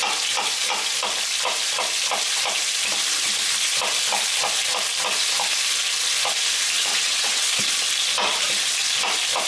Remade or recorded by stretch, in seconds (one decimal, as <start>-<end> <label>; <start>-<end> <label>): 0.0-6.9 recorded; 6.9-7.6 remade; 7.6-9.5 recorded